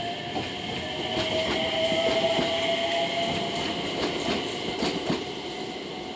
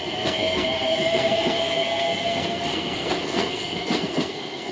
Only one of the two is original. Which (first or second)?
first